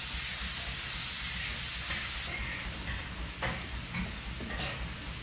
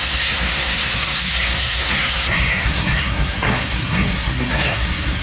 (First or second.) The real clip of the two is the first